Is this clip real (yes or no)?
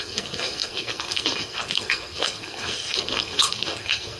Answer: no